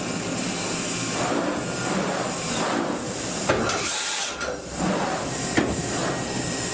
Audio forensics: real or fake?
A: real